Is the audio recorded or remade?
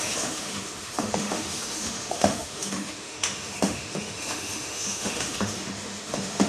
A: remade